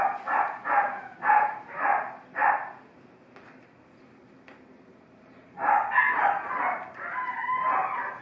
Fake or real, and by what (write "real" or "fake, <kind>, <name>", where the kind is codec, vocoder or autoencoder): real